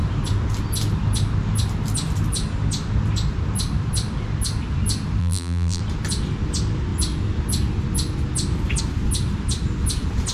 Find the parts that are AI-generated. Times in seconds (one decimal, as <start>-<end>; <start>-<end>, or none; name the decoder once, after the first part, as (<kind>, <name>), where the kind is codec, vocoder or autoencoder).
5.2-5.8 (vocoder, BigVGAN v2)